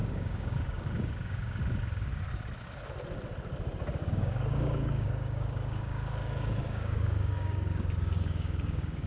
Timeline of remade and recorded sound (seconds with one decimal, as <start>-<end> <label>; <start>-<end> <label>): 0.0-1.6 remade; 1.6-4.0 recorded; 4.0-9.1 remade